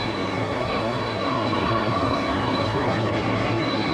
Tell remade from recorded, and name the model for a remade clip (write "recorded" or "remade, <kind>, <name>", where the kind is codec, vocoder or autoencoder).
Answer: remade, codec, SNAC